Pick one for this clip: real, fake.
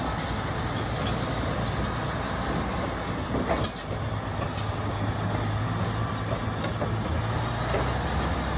real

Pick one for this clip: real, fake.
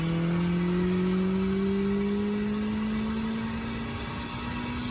real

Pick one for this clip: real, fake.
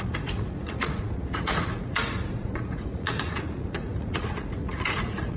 fake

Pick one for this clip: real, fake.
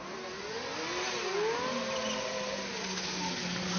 real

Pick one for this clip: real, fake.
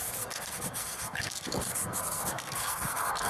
fake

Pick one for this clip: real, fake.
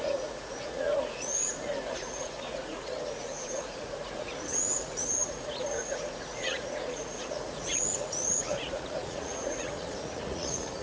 fake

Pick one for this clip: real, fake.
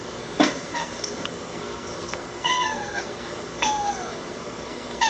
fake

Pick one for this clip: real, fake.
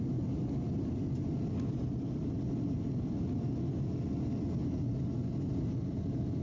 real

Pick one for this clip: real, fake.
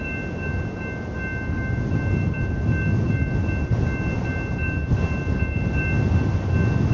real